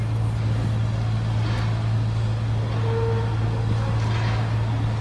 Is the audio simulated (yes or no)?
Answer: no